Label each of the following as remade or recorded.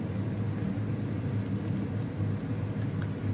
recorded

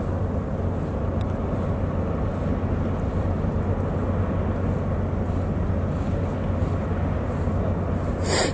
recorded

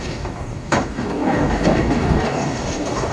remade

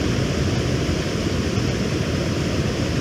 recorded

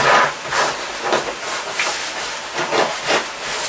recorded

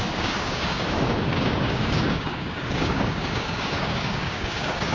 remade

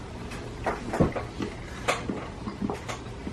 recorded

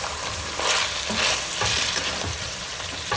recorded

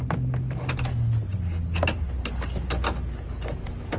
recorded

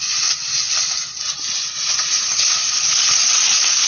recorded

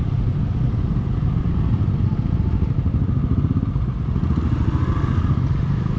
recorded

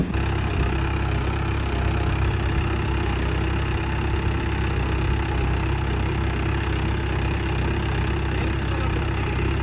recorded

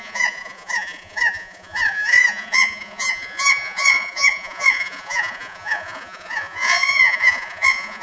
remade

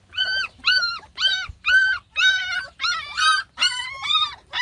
remade